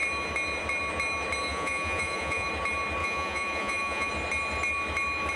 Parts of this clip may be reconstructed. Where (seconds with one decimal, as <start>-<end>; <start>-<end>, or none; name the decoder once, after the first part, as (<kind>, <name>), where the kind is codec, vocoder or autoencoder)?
1.5-2.5 (vocoder, Vocos); 3.0-4.1